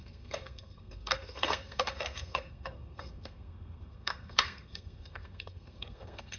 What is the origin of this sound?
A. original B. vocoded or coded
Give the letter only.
B